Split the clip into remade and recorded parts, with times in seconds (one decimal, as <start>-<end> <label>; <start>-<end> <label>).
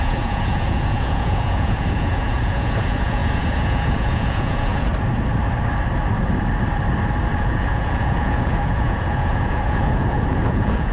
0.0-4.9 remade; 4.9-7.4 recorded; 7.4-10.9 remade